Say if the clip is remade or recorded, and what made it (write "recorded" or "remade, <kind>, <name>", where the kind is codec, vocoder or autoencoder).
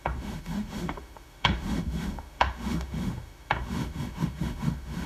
remade, autoencoder, DAC-VAE